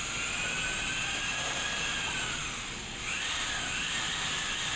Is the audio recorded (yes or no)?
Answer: yes